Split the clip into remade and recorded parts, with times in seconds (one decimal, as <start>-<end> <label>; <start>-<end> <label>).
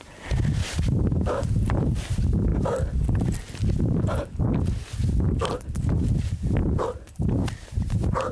0.0-6.6 recorded; 6.6-8.3 remade